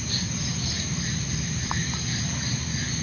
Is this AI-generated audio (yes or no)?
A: no